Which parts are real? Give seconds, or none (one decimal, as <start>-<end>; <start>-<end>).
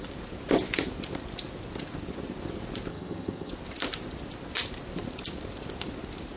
0.0-2.9; 3.5-6.4